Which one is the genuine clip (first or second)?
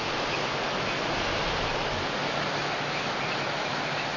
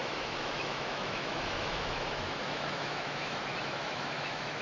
first